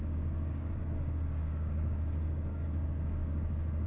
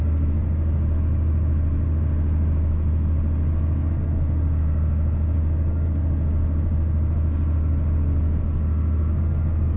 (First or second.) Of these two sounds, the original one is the second